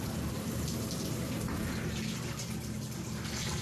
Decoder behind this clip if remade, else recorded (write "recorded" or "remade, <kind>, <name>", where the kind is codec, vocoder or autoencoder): recorded